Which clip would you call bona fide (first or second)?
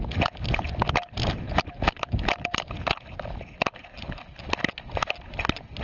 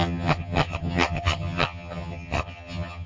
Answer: first